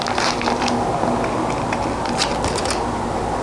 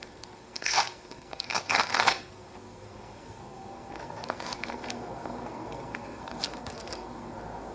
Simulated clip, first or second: second